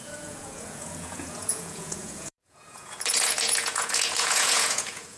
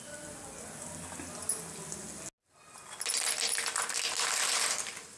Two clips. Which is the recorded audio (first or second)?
second